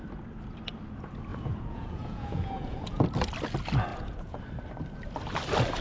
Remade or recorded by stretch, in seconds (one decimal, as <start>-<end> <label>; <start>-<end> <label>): 0.0-1.3 recorded; 1.3-3.0 remade; 3.0-3.9 recorded; 3.9-4.4 remade; 4.4-5.8 recorded

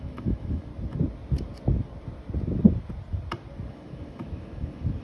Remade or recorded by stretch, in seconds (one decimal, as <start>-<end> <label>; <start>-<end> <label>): 0.0-0.7 remade; 0.7-3.7 recorded; 3.7-5.0 remade

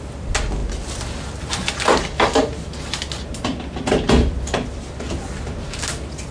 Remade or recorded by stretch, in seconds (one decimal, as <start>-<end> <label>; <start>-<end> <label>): 0.0-6.3 recorded

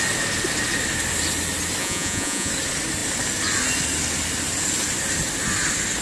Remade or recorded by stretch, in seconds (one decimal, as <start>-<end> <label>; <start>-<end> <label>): 0.0-1.8 recorded; 1.8-2.5 remade; 2.5-6.0 recorded

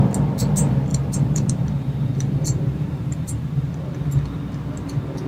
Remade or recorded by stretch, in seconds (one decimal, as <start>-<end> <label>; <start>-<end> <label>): 0.0-0.9 recorded; 0.9-3.7 remade; 3.7-5.3 recorded

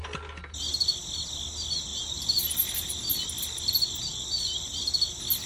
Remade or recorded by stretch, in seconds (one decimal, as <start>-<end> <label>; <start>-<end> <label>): 0.0-1.9 recorded; 1.9-2.5 remade; 2.5-5.5 recorded

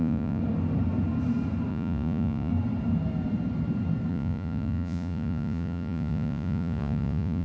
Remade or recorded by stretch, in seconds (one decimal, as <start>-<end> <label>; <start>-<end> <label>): 0.0-0.4 remade; 0.4-1.7 recorded; 1.7-2.5 remade; 2.5-4.1 recorded; 4.1-7.4 remade